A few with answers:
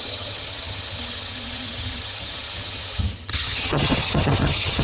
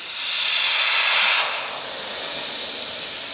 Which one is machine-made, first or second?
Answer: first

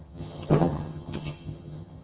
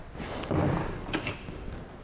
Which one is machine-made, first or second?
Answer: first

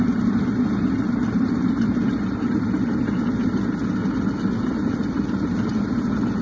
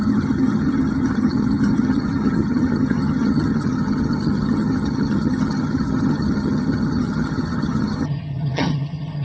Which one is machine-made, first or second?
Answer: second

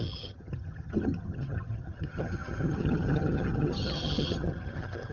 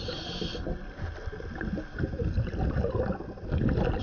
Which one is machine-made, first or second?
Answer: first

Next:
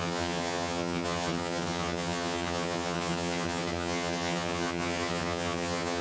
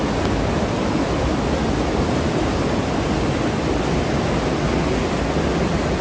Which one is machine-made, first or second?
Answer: first